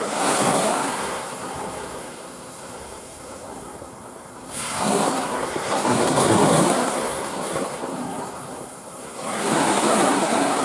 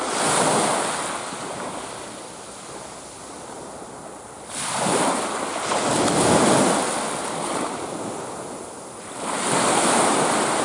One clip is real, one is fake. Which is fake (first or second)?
first